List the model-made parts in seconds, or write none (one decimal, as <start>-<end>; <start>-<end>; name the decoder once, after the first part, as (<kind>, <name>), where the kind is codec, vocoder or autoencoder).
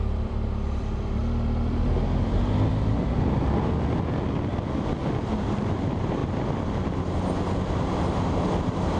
0.0-1.2 (vocoder, BigVGAN v2); 5.2-6.2; 8.4-9.0